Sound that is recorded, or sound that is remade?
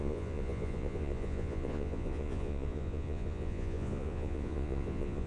remade